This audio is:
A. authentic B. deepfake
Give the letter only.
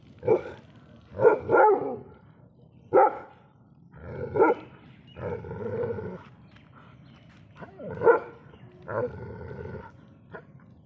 A